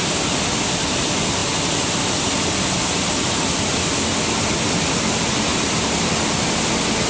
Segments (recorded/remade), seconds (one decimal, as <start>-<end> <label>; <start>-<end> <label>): 0.0-5.5 recorded; 5.5-6.1 remade; 6.1-7.1 recorded